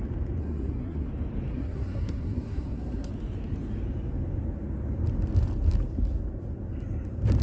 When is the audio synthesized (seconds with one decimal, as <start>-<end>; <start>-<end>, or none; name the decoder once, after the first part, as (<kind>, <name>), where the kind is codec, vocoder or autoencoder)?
0.4-1.1 (codec, SNAC); 1.5-3.1